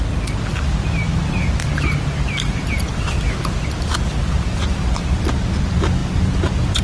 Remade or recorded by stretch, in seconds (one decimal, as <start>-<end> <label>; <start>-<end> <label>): 0.0-6.8 recorded